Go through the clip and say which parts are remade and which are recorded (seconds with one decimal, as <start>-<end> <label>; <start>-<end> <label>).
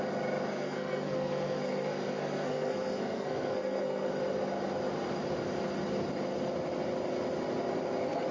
0.0-0.5 recorded; 0.5-4.1 remade; 4.1-8.3 recorded